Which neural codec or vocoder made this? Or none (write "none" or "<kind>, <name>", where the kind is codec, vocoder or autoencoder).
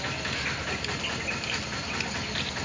none